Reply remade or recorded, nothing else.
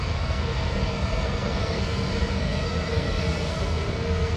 remade